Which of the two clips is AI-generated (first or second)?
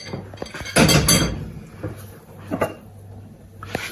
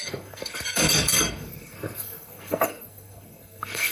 second